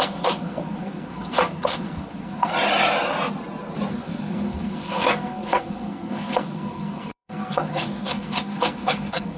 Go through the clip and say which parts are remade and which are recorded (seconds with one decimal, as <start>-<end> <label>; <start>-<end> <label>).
0.0-2.5 remade; 2.5-3.9 recorded; 3.9-9.4 remade